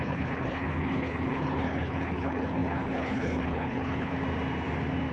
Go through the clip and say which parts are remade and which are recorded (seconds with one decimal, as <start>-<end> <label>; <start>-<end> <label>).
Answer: 0.0-4.1 remade; 4.1-5.1 recorded